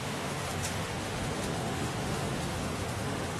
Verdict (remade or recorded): remade